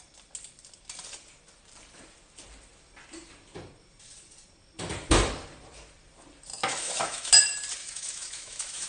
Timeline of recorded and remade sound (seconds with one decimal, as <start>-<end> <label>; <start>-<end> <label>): 0.0-6.5 recorded; 6.5-7.3 remade; 7.3-7.8 recorded; 7.8-8.9 remade